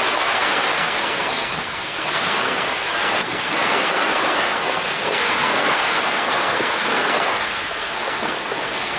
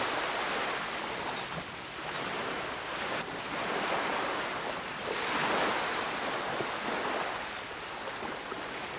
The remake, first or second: first